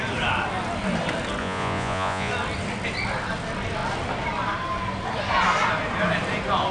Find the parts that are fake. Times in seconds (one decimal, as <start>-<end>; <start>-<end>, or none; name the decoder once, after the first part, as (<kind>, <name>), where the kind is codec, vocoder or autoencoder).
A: 1.4-2.3 (vocoder, Vocos)